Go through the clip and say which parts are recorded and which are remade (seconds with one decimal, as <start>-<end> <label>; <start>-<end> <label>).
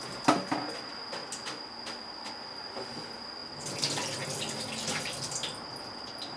0.0-6.4 recorded